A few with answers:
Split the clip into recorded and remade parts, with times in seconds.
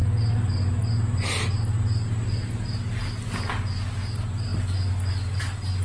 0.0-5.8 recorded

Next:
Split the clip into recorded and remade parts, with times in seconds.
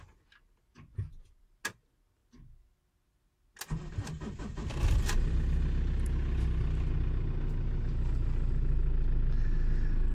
0.0-10.1 recorded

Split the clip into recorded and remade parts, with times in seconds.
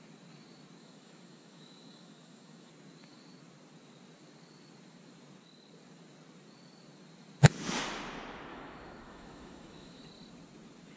0.0-0.8 recorded; 0.8-2.7 remade; 2.7-8.5 recorded; 8.5-10.0 remade; 10.0-11.0 recorded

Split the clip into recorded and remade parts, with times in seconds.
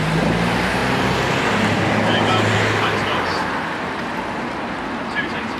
0.0-5.6 recorded